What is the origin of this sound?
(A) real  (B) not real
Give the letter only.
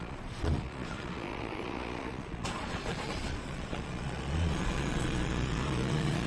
B